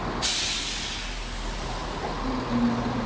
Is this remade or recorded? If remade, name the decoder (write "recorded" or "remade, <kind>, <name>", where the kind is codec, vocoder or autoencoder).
recorded